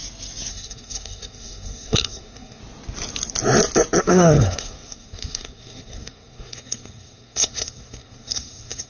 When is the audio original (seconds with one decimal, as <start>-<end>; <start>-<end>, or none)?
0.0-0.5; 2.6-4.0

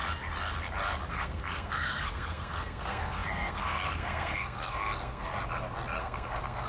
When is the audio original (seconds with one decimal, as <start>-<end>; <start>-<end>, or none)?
0.0-1.1; 5.3-6.0

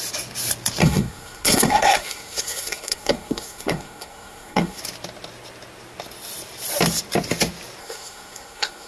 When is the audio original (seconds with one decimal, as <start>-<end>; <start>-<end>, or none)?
0.0-0.8; 4.8-7.8

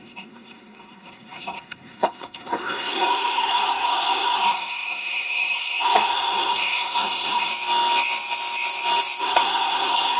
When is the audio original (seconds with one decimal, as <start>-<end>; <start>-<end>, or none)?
7.5-9.2